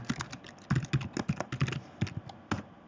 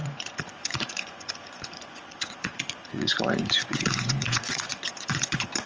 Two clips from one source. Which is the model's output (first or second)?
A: second